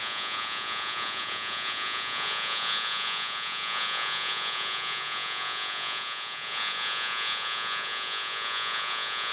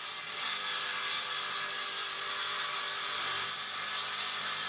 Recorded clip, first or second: second